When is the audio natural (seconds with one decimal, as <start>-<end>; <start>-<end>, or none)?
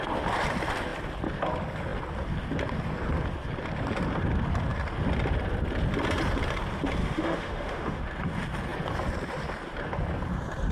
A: 0.0-7.0; 8.0-10.7